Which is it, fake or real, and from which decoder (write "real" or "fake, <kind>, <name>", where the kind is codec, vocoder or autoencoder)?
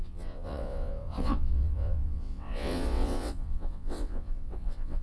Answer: fake, vocoder, WaveNeXt